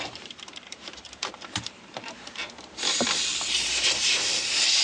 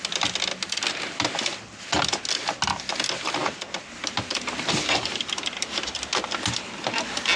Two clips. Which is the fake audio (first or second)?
first